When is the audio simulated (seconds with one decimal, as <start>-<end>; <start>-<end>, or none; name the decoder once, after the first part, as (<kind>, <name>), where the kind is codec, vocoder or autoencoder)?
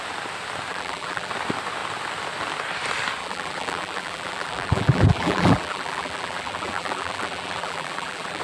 0.7-1.3 (vocoder, BigVGAN v2); 3.2-8.4